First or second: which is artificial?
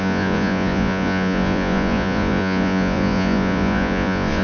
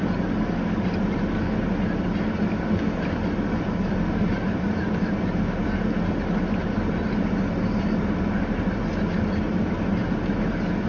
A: first